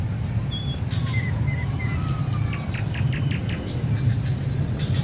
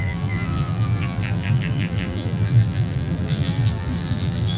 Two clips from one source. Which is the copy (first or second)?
second